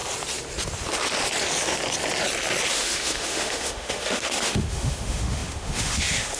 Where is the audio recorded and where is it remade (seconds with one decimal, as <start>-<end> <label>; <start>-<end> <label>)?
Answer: 0.0-2.7 recorded; 2.7-6.4 remade